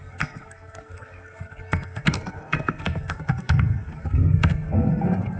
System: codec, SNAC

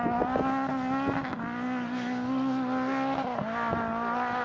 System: none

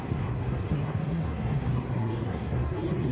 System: codec, SNAC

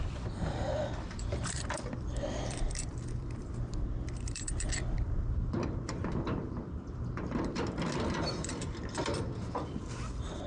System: vocoder, BigVGAN v2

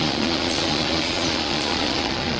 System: vocoder, Vocos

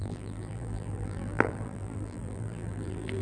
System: vocoder, BigVGAN v2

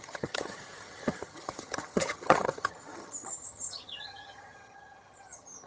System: vocoder, HiFi-GAN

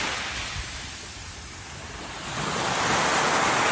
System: none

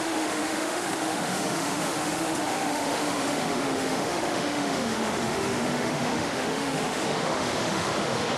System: autoencoder, DAC-VAE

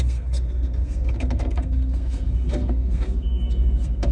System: codec, SNAC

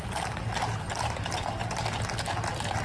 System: none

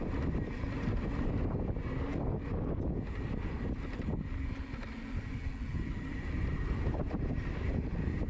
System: none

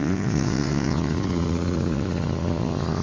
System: vocoder, Vocos